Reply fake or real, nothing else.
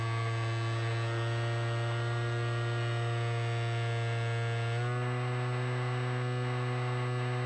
real